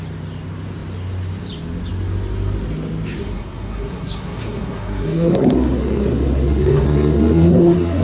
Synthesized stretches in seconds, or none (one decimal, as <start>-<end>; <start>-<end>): 3.2-8.0